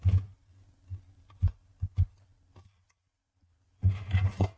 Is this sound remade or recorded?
recorded